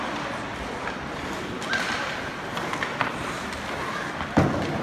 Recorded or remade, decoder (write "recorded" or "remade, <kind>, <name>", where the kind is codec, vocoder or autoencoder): recorded